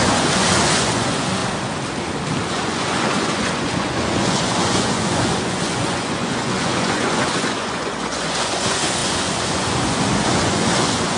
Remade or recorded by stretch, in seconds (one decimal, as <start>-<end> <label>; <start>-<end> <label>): 0.0-1.4 remade; 1.4-2.5 recorded; 2.5-11.2 remade

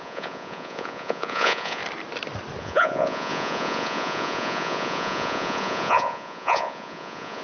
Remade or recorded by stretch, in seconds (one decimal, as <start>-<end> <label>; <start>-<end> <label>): 0.0-1.8 remade; 1.8-2.6 recorded; 2.6-7.4 remade

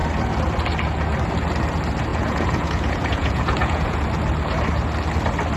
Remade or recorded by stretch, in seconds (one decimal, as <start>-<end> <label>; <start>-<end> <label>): 0.0-2.1 recorded; 2.1-4.0 remade; 4.0-5.6 recorded

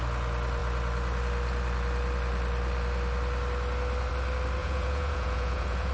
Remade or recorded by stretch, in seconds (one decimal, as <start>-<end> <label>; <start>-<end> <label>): 0.0-4.6 recorded; 4.6-5.9 remade

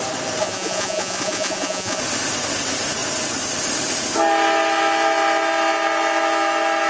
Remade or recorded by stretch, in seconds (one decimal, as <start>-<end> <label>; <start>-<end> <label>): 0.0-0.4 recorded; 0.4-2.0 remade; 2.0-6.9 recorded